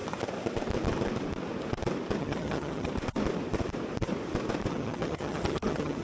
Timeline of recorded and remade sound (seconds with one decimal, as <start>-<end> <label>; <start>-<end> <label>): 0.0-2.2 recorded; 2.2-2.9 remade; 2.9-4.7 recorded; 4.7-6.0 remade